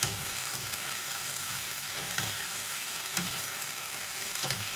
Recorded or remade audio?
remade